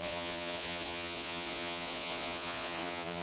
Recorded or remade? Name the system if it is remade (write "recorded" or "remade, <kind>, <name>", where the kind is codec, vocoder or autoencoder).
remade, vocoder, Vocos